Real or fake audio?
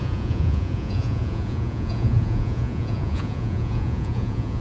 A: fake